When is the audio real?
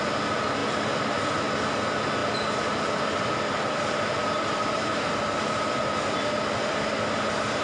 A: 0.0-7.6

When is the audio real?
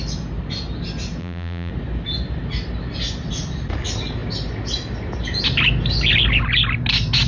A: 0.0-1.2; 1.7-7.3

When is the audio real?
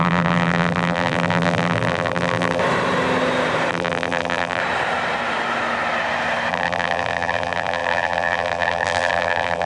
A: 2.6-3.7; 4.6-6.5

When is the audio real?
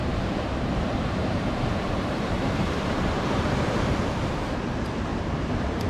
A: 3.5-5.1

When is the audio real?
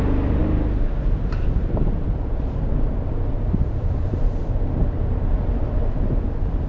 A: 0.0-0.4; 4.4-6.7